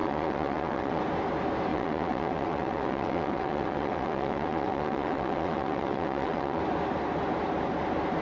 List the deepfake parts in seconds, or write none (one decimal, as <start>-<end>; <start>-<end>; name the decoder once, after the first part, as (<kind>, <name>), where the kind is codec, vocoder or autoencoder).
0.0-1.0 (vocoder, WaveNeXt); 1.7-6.6